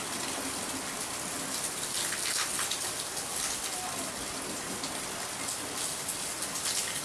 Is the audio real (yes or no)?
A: yes